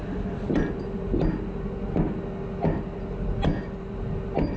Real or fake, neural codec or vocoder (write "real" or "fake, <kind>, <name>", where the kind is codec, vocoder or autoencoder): real